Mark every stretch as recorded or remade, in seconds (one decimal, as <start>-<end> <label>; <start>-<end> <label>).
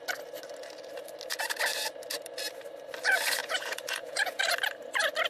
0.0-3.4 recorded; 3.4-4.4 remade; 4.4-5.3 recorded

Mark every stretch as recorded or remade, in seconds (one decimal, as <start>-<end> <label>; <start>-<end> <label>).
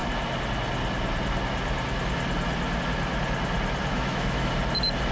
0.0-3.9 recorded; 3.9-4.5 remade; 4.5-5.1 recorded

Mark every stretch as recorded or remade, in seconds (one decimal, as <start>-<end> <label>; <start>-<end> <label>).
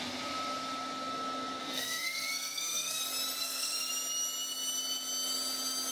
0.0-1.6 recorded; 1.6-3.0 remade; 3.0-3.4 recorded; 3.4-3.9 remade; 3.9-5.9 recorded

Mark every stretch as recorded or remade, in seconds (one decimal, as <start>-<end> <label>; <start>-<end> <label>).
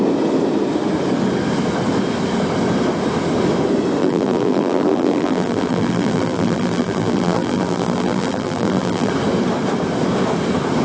0.0-4.0 recorded; 4.0-9.1 remade; 9.1-10.8 recorded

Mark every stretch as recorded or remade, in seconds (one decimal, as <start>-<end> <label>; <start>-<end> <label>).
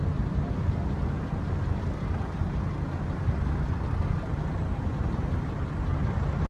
0.0-6.5 recorded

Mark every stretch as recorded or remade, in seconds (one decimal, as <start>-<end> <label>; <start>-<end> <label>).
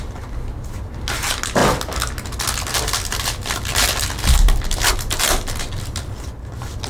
0.0-6.9 recorded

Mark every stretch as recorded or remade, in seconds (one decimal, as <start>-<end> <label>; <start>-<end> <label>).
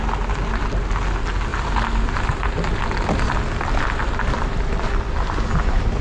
0.0-1.5 recorded; 1.5-5.1 remade; 5.1-6.0 recorded